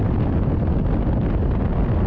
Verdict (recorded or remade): recorded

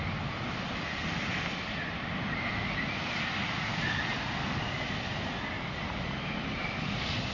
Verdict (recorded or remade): recorded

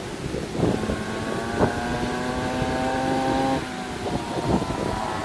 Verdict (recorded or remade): recorded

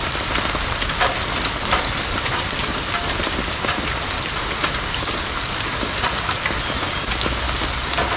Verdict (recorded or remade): recorded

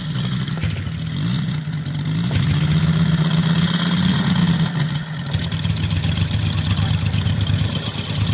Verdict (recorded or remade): recorded